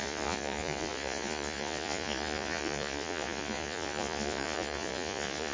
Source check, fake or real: fake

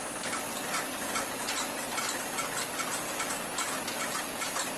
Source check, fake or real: real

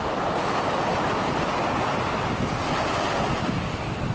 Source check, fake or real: real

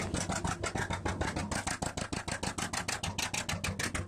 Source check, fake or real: real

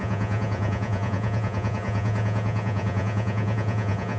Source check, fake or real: fake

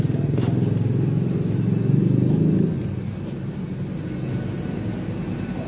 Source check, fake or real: real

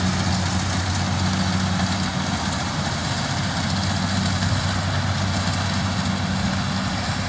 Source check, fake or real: real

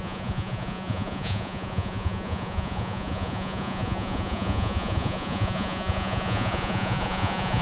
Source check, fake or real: fake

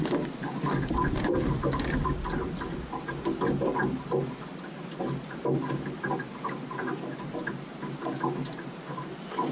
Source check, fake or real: real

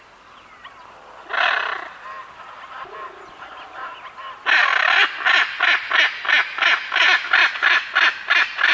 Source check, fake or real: real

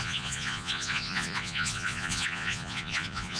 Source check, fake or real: fake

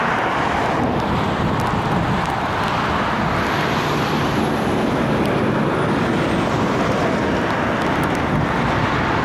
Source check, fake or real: real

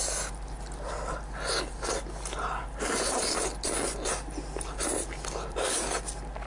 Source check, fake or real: real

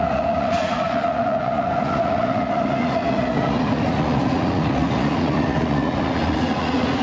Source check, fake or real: fake